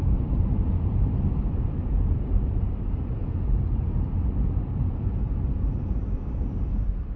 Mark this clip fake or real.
fake